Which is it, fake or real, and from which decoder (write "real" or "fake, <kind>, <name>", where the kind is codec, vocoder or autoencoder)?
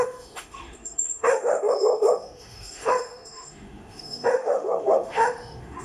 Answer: fake, autoencoder, DAC-VAE